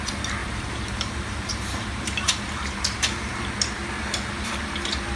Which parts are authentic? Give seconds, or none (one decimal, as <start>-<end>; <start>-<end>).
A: 0.0-0.4; 3.5-5.2